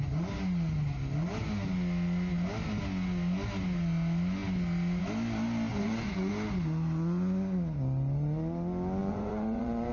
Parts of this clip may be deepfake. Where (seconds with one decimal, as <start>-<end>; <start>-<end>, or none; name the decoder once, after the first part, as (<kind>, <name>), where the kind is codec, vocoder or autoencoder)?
5.7-6.3 (vocoder, Vocos); 9.0-9.9